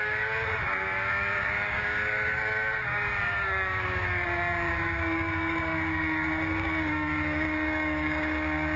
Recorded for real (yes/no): no